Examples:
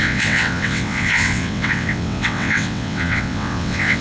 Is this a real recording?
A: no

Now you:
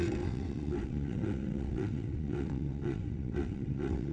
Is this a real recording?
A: no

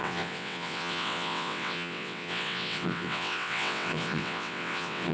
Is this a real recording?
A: no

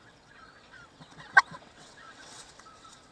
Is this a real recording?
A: no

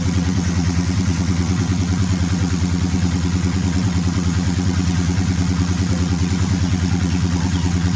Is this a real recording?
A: no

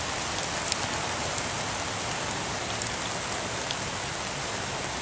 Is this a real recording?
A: yes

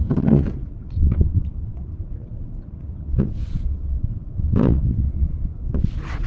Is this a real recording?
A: no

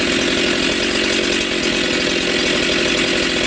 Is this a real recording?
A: yes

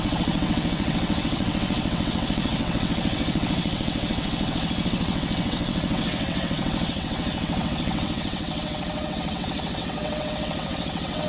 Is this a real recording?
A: no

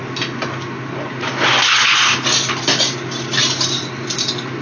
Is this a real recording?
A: yes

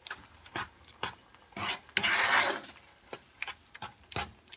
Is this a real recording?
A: yes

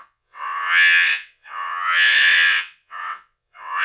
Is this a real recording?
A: no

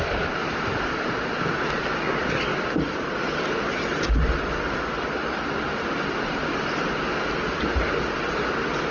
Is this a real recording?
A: yes